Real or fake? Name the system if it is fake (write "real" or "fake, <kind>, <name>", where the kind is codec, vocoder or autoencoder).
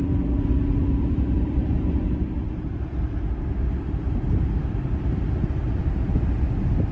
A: real